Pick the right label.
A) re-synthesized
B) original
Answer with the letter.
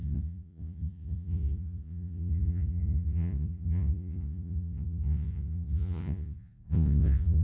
A